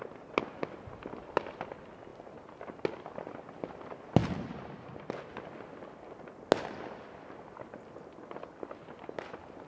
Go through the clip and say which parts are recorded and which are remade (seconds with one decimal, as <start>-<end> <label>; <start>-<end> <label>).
0.0-9.7 recorded